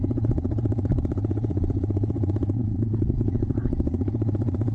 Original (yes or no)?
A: no